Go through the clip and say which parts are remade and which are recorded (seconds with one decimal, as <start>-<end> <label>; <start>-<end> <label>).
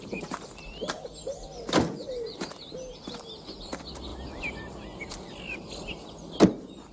0.0-6.9 recorded